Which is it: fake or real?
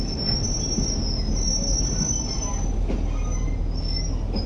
real